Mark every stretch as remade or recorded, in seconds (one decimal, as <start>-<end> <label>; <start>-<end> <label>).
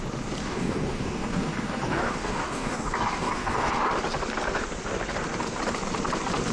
0.0-0.4 recorded; 0.4-3.7 remade; 3.7-6.5 recorded